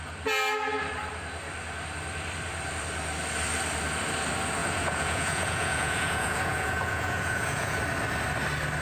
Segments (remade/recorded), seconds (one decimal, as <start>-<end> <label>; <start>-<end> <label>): 0.0-4.6 recorded; 4.6-7.8 remade; 7.8-8.8 recorded